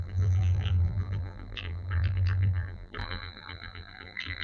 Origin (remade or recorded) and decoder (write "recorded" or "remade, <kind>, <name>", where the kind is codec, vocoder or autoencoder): remade, vocoder, BigVGAN v2